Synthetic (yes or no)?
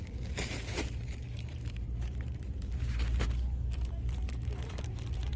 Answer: yes